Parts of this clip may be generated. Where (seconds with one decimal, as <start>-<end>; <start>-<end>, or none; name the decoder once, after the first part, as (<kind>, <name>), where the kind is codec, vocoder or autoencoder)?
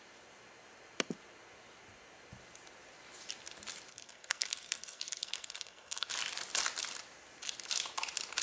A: 3.9-6.1 (codec, SNAC)